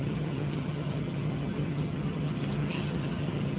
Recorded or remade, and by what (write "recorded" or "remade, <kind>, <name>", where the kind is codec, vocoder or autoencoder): remade, vocoder, HiFi-GAN